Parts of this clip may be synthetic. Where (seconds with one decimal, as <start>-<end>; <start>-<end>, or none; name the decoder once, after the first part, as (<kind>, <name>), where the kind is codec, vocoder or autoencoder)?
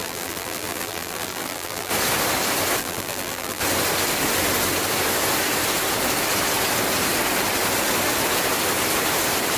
0.0-1.9 (vocoder, BigVGAN v2); 2.8-3.6